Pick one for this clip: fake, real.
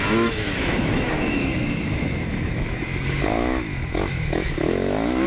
fake